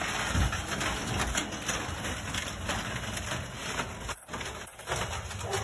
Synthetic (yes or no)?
no